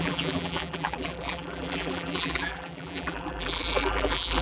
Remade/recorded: remade